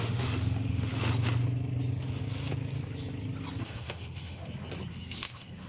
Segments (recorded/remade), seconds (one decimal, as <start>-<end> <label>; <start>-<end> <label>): 0.0-0.9 remade; 0.9-3.6 recorded; 3.6-4.4 remade; 4.4-4.9 recorded; 4.9-5.7 remade